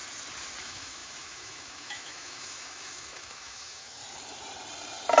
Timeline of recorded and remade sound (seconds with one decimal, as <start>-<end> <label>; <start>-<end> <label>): 0.0-0.6 recorded; 0.6-4.0 remade; 4.0-5.2 recorded